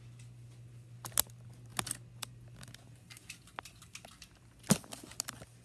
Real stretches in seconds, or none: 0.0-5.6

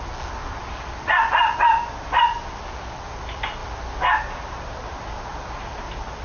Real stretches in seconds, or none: 0.0-6.2

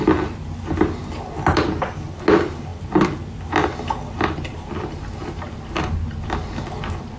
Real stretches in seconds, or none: 0.0-7.2

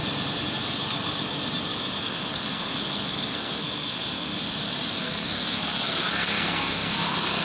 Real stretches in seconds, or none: 0.0-2.0; 4.4-4.9

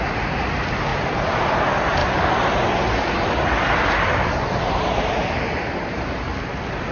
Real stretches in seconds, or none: 0.0-0.9; 1.4-2.0; 6.1-6.9